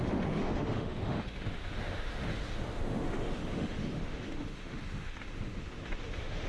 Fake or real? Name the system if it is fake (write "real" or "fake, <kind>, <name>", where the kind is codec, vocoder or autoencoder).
fake, autoencoder, DAC-VAE